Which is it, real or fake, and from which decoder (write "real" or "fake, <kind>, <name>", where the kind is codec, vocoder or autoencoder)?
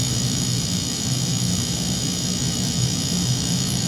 fake, autoencoder, DAC-VAE